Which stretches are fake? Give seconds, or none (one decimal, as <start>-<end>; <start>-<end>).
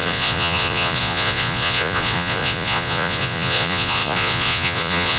0.0-5.2